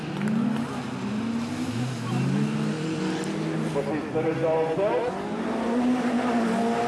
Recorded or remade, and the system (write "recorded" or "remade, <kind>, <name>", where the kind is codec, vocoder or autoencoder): recorded